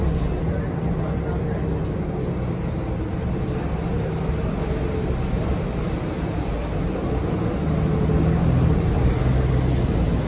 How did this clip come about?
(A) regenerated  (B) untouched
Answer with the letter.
B